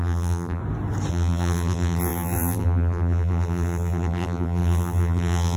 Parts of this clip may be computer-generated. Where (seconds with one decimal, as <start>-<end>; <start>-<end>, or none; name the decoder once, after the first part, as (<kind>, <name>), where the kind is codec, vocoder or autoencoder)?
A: 0.0-0.6 (vocoder, BigVGAN v2); 1.1-5.6